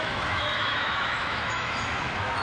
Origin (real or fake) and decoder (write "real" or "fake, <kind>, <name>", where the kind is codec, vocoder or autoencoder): fake, autoencoder, DAC-VAE